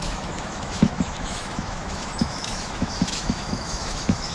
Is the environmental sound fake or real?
fake